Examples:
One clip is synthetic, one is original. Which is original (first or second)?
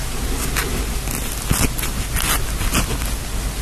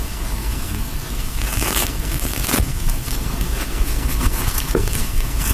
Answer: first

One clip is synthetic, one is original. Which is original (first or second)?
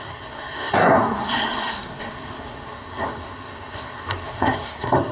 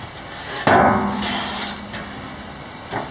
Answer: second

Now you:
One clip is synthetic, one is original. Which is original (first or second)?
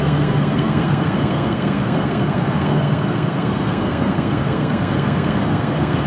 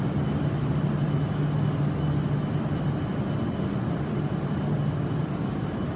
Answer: second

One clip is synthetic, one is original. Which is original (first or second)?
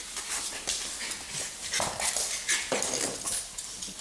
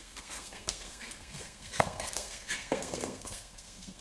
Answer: first